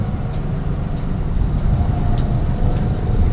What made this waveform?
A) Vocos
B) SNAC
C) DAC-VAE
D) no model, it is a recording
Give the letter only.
D